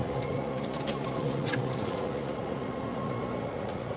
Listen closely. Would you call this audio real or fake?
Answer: fake